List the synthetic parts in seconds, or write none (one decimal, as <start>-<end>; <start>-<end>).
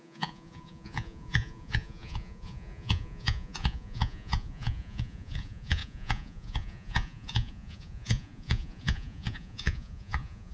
0.0-10.5